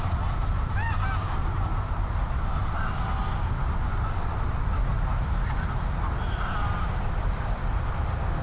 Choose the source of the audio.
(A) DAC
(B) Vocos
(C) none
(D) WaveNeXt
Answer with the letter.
C